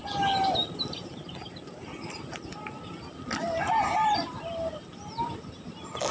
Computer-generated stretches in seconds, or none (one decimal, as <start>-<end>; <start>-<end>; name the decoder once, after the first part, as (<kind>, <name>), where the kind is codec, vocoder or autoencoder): none